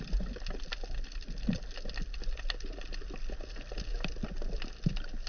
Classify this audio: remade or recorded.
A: recorded